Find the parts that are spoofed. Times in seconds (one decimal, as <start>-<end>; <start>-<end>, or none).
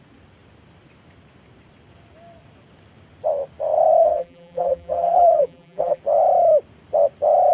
4.0-6.0